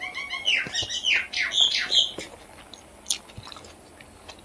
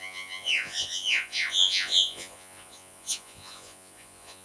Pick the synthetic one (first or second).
second